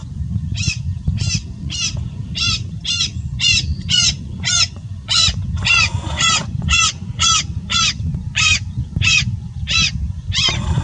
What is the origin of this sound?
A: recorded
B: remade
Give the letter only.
B